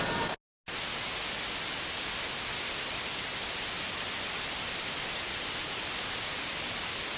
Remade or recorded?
recorded